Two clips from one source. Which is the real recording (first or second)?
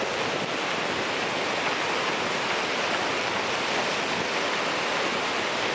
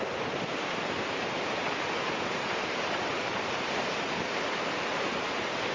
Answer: first